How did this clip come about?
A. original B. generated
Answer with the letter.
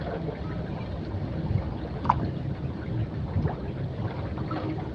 A